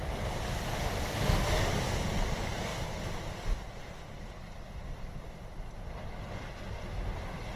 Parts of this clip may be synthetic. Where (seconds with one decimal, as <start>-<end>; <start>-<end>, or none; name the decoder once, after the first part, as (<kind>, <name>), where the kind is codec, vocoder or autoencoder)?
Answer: 0.7-1.7 (autoencoder, DAC-VAE)